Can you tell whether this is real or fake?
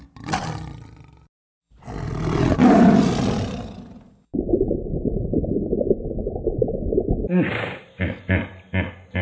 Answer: real